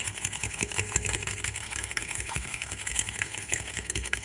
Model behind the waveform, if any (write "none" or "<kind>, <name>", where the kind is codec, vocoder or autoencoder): codec, SNAC